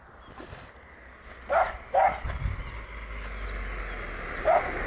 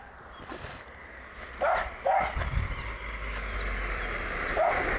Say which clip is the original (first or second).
first